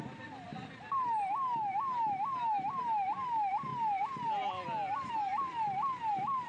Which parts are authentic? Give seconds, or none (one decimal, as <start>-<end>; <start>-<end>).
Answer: 0.0-6.5